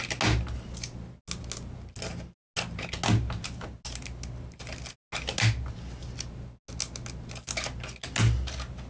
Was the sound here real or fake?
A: real